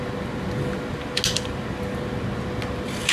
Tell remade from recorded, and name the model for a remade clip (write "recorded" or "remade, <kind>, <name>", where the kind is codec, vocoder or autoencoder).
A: recorded